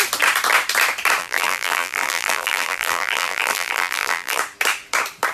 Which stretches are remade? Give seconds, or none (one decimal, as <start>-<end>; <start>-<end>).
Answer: 1.2-4.4